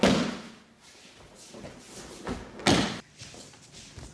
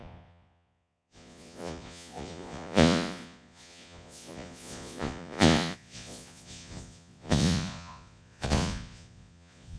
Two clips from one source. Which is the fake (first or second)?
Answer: second